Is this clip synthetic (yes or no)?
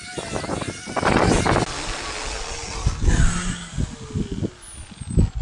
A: no